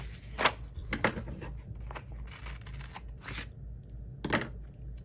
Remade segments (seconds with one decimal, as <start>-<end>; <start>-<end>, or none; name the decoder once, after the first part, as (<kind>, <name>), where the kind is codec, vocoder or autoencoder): none